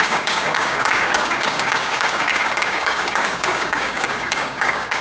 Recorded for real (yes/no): no